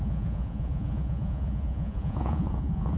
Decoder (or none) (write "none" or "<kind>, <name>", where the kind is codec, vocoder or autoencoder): vocoder, Vocos